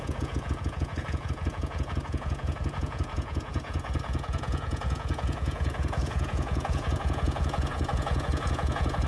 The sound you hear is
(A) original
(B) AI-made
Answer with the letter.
B